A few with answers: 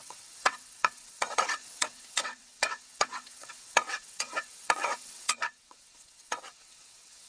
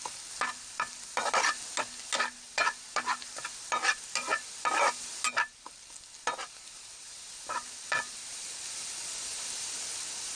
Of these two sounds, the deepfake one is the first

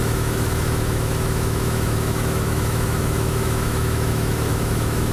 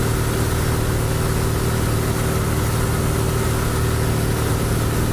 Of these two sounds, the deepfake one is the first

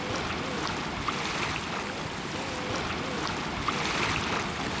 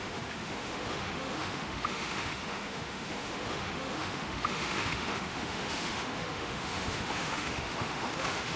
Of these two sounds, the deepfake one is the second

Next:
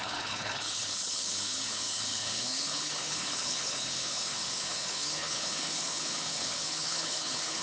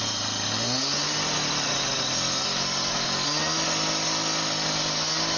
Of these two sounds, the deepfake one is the first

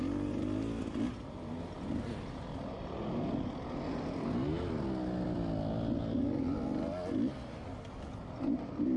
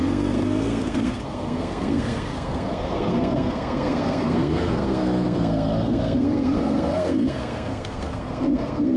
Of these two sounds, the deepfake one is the second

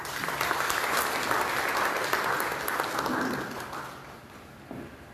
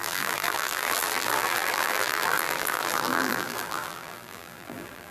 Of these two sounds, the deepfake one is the second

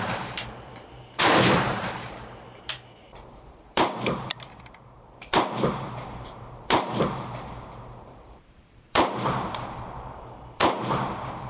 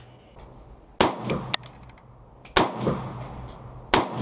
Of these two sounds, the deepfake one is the first